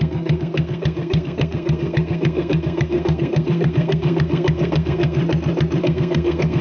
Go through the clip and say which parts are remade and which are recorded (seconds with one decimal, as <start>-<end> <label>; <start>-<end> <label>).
0.0-5.2 remade; 5.2-5.8 recorded; 5.8-6.6 remade

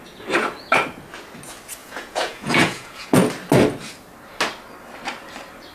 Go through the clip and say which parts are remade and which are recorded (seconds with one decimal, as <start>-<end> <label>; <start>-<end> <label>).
0.0-1.8 recorded; 1.8-3.2 remade; 3.2-5.7 recorded

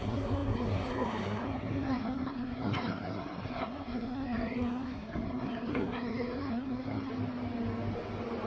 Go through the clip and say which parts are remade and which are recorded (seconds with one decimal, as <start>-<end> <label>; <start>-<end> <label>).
0.0-7.1 remade; 7.1-8.5 recorded

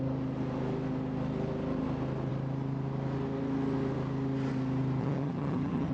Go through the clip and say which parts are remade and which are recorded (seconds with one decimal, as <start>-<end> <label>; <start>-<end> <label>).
0.0-5.0 recorded; 5.0-5.9 remade

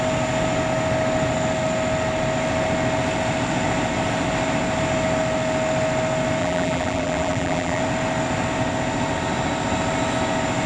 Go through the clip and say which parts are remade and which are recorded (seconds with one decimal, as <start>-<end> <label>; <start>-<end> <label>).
0.0-6.4 recorded; 6.4-7.8 remade; 7.8-10.7 recorded

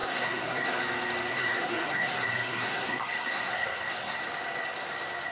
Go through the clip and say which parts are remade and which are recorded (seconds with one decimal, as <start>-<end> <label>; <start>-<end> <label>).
0.0-0.8 remade; 0.8-1.3 recorded; 1.3-4.2 remade; 4.2-5.3 recorded